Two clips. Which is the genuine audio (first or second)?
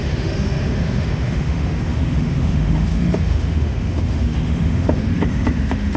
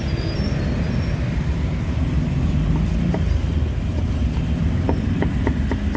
second